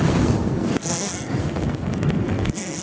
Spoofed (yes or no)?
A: yes